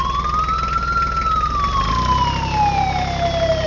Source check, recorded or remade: recorded